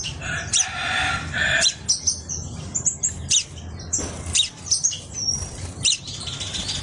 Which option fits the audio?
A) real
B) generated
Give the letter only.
A